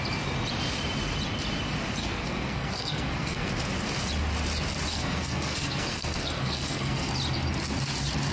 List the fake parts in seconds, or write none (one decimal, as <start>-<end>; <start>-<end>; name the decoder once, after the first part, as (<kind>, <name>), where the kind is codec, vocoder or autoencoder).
2.0-3.5 (codec, SNAC); 4.9-7.1